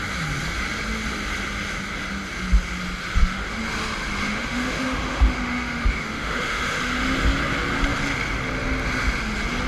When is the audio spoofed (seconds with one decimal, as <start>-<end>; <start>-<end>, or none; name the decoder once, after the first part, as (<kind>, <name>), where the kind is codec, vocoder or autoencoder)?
3.1-3.6 (autoencoder, DAC-VAE); 4.2-6.8